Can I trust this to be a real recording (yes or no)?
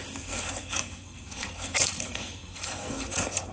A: no